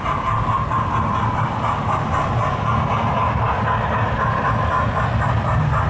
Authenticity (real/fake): real